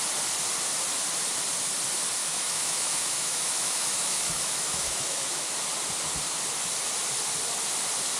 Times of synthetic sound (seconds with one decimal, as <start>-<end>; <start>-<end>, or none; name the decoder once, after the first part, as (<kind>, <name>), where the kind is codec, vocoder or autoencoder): 2.2-5.5 (autoencoder, DAC-VAE)